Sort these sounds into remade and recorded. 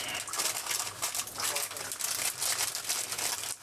recorded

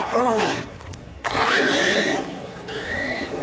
remade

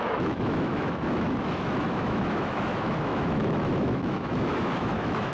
remade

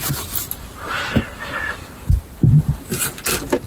recorded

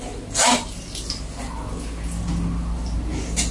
recorded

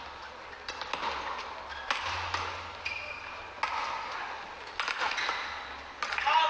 recorded